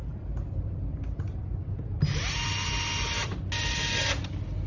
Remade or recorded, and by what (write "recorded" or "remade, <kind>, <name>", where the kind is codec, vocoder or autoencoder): recorded